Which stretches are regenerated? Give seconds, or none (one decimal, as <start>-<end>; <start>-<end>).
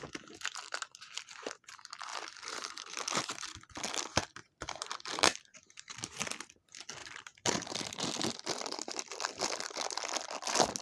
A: 2.1-2.9; 5.1-6.3; 7.0-8.1